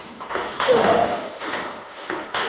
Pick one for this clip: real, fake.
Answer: fake